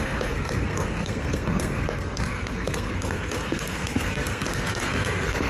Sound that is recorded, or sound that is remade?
remade